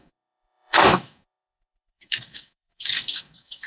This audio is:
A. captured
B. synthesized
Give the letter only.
B